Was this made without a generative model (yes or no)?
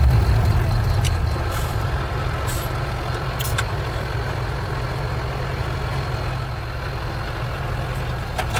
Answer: yes